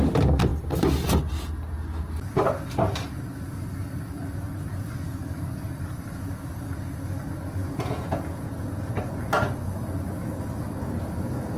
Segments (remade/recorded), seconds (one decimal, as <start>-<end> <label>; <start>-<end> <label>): 0.0-7.6 recorded; 7.6-8.9 remade; 8.9-11.6 recorded